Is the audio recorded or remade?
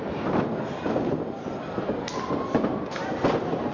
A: recorded